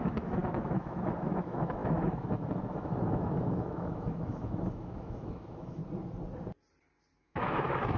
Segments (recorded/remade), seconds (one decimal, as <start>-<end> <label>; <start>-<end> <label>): 0.0-5.8 remade; 5.8-7.2 recorded; 7.2-8.0 remade